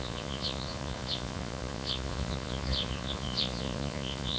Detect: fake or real fake